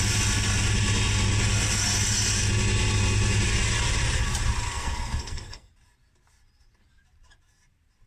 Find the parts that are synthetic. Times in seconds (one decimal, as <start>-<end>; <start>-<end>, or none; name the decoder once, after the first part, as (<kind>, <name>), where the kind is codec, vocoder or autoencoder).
4.7-5.7 (codec, SNAC)